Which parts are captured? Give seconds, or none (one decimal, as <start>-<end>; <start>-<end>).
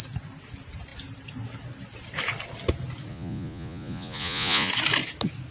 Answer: 0.0-3.1; 4.7-5.5